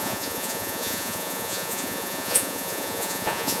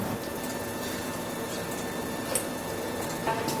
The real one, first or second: second